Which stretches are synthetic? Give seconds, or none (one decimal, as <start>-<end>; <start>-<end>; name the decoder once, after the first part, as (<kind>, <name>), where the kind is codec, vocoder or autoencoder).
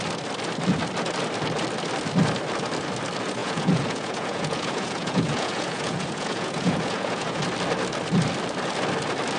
3.4-7.4 (vocoder, Vocos)